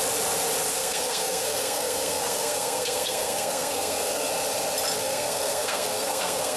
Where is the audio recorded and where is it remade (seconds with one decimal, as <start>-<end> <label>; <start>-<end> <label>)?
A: 0.0-0.7 recorded; 0.7-4.3 remade; 4.3-5.0 recorded; 5.0-6.6 remade